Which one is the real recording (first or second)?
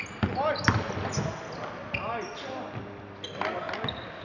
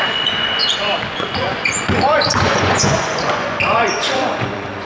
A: first